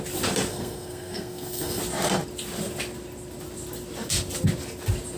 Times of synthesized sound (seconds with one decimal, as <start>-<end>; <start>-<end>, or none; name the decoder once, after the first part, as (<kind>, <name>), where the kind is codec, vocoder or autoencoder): 0.5-1.8 (codec, SNAC)